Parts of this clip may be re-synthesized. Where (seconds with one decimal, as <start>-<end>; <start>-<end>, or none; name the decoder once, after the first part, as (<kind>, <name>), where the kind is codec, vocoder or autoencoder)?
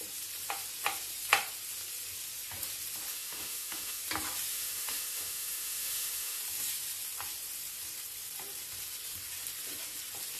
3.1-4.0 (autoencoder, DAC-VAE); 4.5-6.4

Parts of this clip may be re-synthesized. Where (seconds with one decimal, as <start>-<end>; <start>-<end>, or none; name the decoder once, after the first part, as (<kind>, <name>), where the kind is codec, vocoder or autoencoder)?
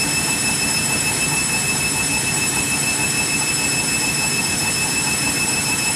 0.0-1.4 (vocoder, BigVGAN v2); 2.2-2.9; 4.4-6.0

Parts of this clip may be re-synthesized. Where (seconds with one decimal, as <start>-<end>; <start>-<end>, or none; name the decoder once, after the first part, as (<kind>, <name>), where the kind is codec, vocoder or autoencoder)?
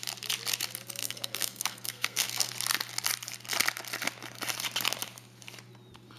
1.0-2.5 (codec, SNAC)